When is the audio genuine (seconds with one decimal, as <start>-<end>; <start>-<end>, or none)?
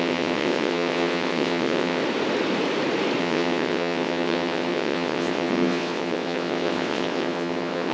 2.0-3.2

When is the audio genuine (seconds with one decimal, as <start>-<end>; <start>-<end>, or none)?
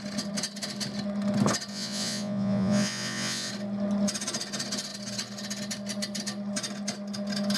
0.0-1.7; 3.5-7.6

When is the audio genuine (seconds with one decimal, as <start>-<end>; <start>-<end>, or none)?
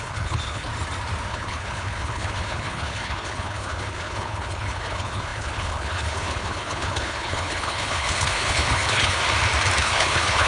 0.7-1.3; 9.2-9.8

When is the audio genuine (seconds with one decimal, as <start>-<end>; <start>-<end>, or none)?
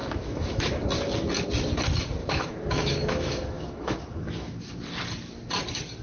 0.6-2.2; 4.6-6.0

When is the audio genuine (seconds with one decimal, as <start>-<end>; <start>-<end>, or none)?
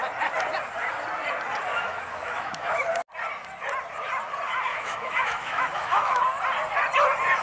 0.0-1.7; 2.9-4.7; 6.2-7.4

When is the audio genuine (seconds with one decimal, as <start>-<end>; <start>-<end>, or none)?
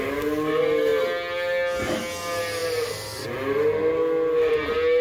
0.0-5.0